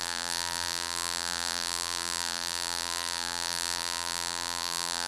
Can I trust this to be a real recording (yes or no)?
no